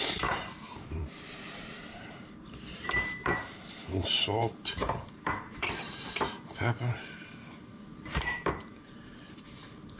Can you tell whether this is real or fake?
fake